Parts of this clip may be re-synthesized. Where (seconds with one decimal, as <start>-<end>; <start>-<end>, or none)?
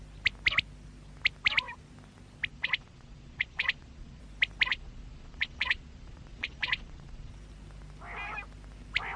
2.5-4.2; 4.7-7.3